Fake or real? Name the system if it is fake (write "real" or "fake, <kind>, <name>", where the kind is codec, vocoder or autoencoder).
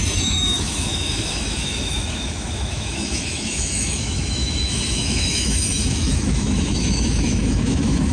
fake, autoencoder, DAC-VAE